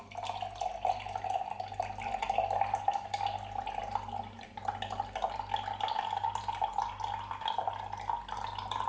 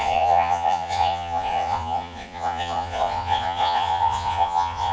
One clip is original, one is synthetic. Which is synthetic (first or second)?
second